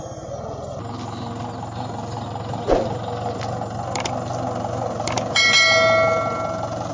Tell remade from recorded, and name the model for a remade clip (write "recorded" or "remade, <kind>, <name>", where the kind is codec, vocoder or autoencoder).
recorded